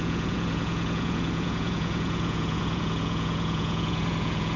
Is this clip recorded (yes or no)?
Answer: no